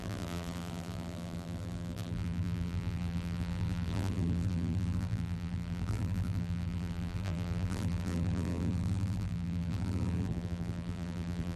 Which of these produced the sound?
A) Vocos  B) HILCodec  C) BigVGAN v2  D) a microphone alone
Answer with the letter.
C